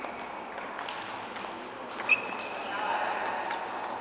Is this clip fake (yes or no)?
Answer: no